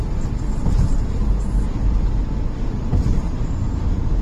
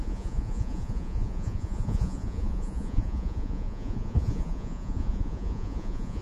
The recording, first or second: first